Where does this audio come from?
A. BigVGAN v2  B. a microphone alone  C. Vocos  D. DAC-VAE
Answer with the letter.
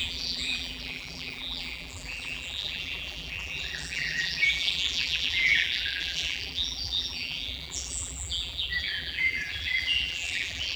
A